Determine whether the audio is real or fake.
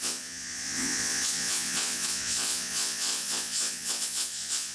fake